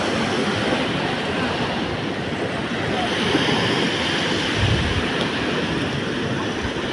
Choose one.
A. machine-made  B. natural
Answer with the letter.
B